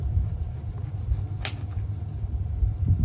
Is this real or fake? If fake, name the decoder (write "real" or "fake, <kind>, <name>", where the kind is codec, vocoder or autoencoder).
real